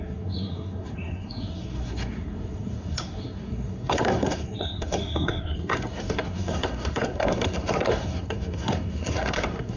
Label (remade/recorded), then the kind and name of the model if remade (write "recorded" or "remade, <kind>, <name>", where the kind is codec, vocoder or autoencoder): remade, codec, SNAC